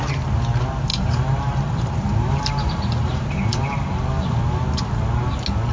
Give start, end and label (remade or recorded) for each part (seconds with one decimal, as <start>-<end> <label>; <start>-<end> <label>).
0.0-0.9 recorded; 0.9-4.3 remade; 4.3-5.7 recorded